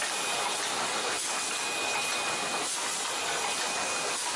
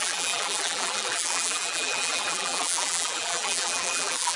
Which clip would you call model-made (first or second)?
second